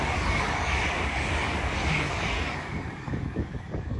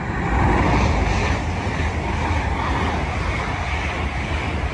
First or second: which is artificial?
first